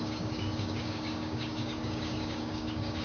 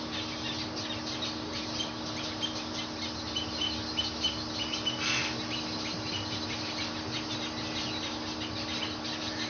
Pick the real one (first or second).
second